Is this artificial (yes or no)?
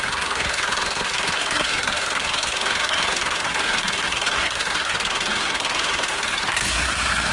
yes